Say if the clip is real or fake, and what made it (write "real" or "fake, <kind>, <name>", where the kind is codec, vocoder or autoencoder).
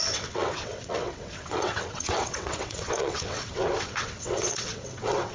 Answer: fake, vocoder, WaveNeXt